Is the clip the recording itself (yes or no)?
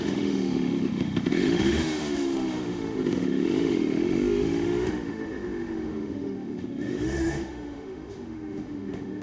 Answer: no